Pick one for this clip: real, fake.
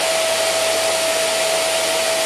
real